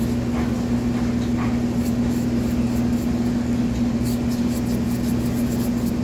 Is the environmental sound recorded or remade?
recorded